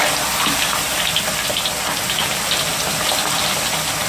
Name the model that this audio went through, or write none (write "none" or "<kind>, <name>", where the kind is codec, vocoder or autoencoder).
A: none